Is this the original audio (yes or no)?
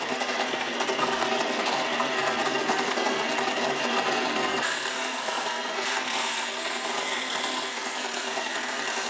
no